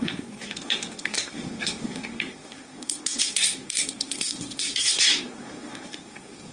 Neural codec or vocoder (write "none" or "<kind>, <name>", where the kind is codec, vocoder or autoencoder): codec, SNAC